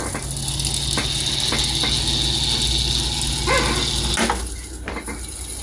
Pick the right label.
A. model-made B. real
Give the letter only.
B